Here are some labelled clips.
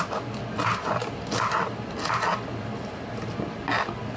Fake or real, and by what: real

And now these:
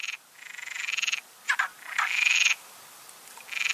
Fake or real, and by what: real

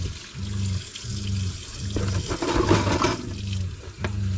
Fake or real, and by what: real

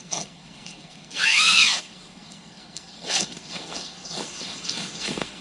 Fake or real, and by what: fake, codec, SNAC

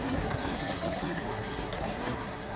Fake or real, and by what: fake, codec, SNAC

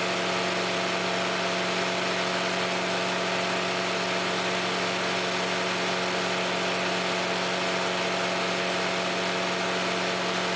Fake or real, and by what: real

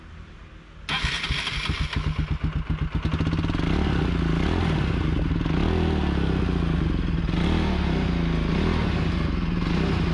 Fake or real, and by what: real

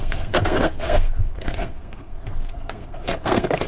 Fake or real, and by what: fake, codec, SNAC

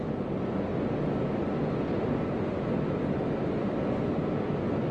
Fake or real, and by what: real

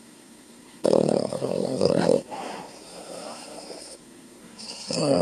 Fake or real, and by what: fake, codec, SNAC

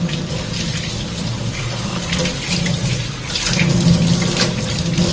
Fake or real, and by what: real